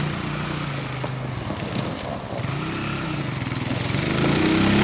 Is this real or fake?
real